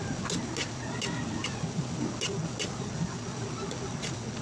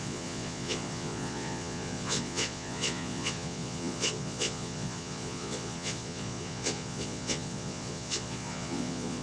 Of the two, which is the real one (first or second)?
first